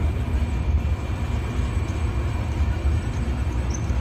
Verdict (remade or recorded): remade